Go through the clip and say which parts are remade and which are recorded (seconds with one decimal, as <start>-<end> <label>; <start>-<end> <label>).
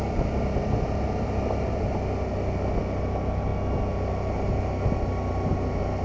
0.0-0.6 recorded; 0.6-1.9 remade; 1.9-6.0 recorded